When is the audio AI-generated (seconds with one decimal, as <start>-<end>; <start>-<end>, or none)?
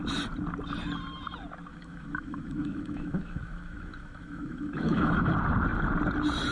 1.7-5.3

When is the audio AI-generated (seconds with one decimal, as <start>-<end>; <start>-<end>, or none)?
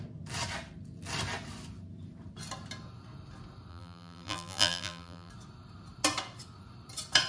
3.7-5.3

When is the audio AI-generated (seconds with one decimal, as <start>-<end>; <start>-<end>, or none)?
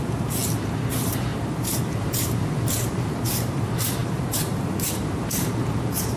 0.0-0.4; 0.9-6.2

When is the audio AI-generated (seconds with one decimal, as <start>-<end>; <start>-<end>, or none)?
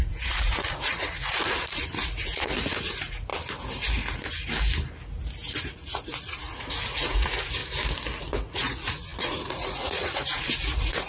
0.0-3.3; 5.6-7.6; 8.2-11.1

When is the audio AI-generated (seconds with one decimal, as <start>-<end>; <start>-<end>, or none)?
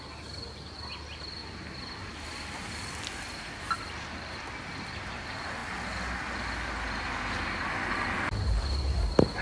none